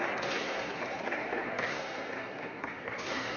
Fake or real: fake